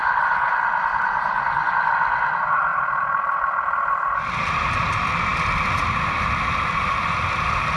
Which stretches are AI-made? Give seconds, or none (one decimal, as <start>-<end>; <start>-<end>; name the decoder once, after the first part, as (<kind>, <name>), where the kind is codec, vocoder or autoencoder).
none